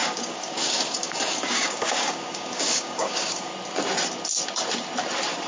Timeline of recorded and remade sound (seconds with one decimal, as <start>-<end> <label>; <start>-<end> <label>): 0.0-3.5 remade; 3.5-5.5 recorded